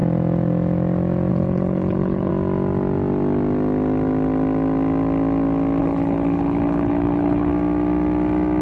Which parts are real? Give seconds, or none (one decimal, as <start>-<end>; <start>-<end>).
0.0-1.3; 2.3-5.8; 7.5-8.6